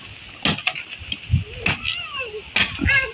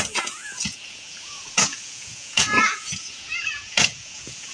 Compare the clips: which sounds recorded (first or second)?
first